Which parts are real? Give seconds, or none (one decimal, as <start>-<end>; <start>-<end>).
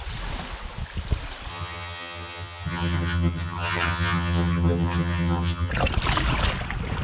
0.0-1.5; 5.7-7.0